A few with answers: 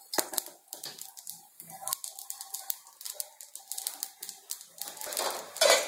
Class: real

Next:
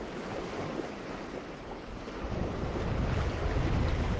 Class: real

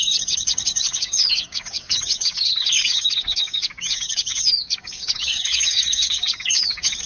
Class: fake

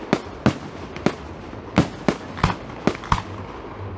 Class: real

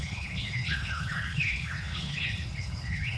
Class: fake